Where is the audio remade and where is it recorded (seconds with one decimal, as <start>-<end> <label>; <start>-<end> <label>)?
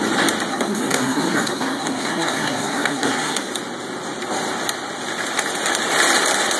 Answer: 0.0-0.5 recorded; 0.5-3.5 remade; 3.5-6.6 recorded